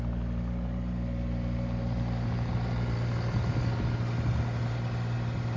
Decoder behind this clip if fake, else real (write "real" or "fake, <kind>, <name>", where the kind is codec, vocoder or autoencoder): real